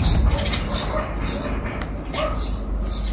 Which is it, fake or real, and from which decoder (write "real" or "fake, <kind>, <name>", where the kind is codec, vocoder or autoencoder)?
real